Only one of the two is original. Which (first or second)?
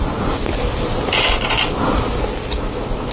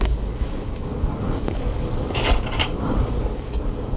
first